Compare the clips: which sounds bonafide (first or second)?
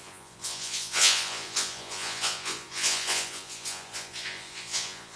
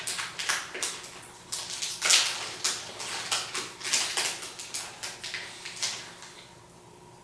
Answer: second